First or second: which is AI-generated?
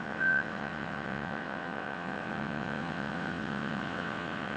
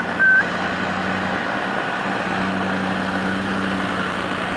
first